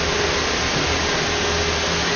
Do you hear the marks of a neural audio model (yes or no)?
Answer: no